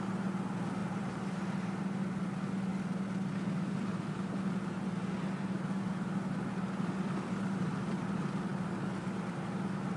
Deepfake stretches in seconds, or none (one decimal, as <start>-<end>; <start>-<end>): 0.8-1.8